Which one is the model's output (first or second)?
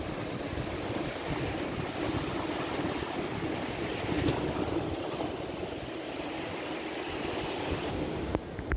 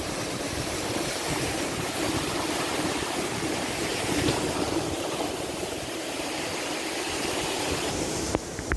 second